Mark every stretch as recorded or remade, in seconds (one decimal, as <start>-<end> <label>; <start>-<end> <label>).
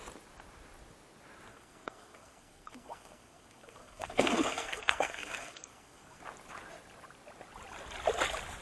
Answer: 0.0-1.5 recorded; 1.5-6.2 remade; 6.2-8.6 recorded